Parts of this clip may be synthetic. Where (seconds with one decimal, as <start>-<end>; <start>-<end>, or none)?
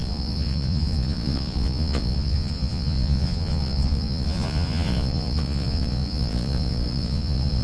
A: 0.0-7.6